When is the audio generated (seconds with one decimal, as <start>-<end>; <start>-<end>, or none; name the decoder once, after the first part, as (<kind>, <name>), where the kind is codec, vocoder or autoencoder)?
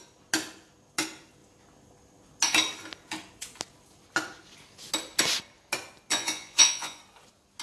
6.1-7.0 (vocoder, Vocos)